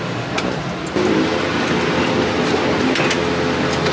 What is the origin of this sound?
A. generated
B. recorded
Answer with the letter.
B